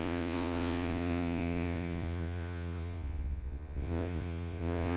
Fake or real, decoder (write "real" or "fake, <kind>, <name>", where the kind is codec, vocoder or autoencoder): fake, vocoder, Vocos